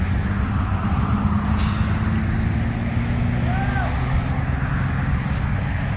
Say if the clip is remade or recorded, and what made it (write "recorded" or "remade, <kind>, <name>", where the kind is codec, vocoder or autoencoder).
recorded